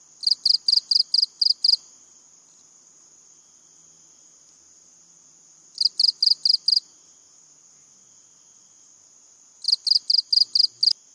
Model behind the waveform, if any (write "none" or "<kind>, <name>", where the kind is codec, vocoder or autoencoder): none